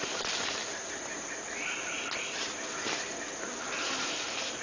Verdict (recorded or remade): recorded